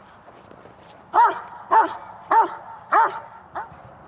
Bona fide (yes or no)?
no